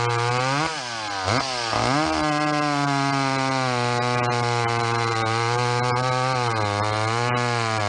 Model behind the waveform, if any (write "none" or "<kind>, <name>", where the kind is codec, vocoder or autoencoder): none